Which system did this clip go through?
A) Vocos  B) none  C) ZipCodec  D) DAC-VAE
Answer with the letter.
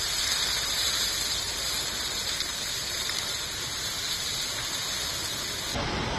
B